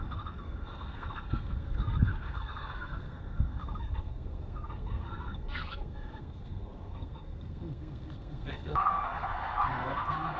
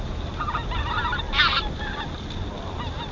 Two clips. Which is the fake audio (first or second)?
first